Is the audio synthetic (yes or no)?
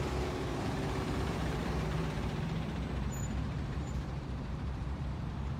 yes